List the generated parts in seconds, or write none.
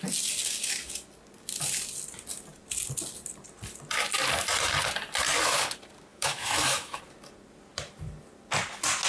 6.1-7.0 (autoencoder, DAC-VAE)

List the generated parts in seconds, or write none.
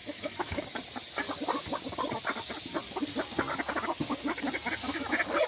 0.0-0.6 (autoencoder, DAC-VAE)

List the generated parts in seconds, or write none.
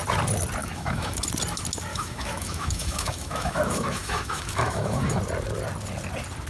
0.6-1.2 (autoencoder, DAC-VAE); 1.9-5.2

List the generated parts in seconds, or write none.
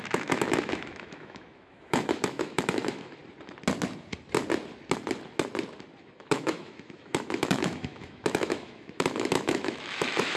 0.0-3.2 (autoencoder, DAC-VAE); 6.0-10.4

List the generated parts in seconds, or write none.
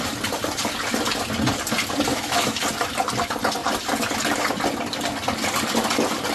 2.1-2.6 (autoencoder, DAC-VAE)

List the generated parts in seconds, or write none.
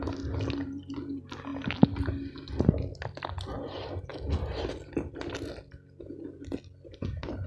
none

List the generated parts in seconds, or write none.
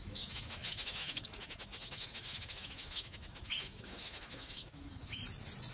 0.0-5.2 (autoencoder, DAC-VAE)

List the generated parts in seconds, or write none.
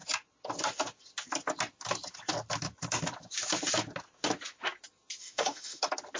5.2-5.8 (autoencoder, DAC-VAE)